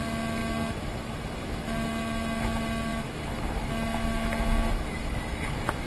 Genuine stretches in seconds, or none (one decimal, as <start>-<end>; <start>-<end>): none